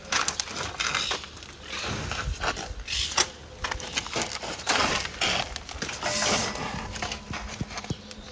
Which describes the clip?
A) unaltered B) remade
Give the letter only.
A